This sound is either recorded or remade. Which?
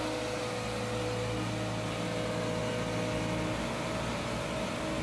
recorded